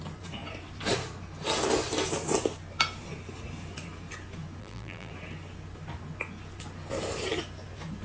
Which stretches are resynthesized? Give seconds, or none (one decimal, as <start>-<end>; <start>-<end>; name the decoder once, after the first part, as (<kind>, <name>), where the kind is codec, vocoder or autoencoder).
4.6-5.1 (vocoder, BigVGAN v2)